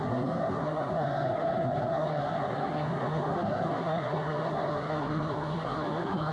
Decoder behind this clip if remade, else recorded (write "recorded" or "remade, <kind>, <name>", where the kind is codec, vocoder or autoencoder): remade, codec, SNAC